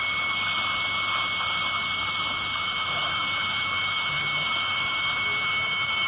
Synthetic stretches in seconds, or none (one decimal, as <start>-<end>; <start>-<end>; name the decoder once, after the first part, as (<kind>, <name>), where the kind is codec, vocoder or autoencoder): 2.3-6.1 (autoencoder, DAC-VAE)